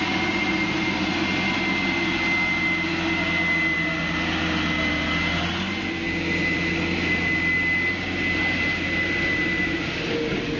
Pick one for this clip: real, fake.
real